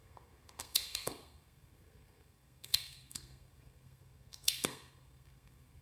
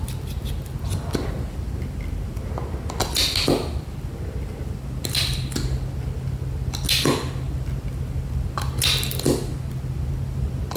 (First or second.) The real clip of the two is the second